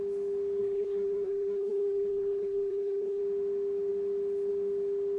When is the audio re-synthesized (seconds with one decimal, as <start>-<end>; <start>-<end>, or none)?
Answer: 0.6-3.2